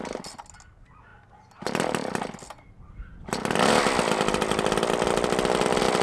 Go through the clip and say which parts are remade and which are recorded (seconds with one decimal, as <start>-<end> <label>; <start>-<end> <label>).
0.0-6.0 recorded